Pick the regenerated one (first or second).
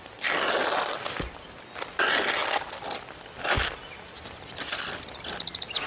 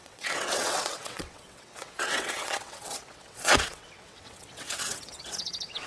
second